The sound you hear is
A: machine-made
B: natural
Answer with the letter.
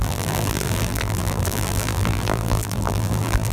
A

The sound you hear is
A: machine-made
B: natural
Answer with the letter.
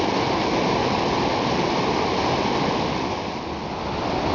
B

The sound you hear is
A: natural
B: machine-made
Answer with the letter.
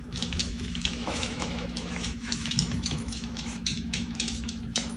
B